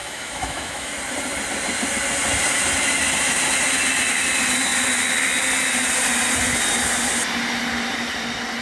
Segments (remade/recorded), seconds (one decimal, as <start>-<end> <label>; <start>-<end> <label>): 0.0-0.9 remade; 0.9-8.6 recorded